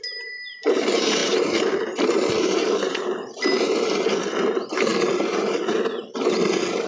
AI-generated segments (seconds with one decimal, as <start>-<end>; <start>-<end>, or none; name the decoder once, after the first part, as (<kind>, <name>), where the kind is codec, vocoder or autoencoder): 0.0-6.0 (vocoder, BigVGAN v2)